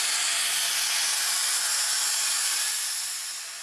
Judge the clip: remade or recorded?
recorded